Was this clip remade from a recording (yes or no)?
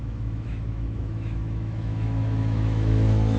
yes